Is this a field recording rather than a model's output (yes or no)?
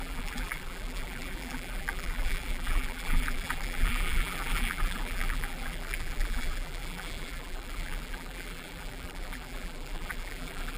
no